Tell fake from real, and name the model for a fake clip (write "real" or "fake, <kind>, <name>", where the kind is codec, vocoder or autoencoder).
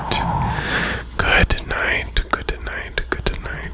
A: real